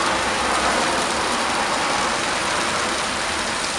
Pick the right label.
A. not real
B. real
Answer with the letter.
B